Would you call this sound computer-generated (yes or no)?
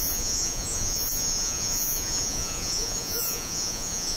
yes